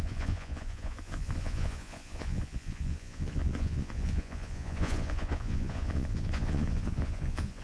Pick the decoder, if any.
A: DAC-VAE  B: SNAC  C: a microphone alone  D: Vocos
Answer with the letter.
D